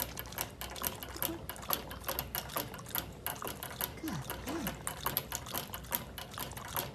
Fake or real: real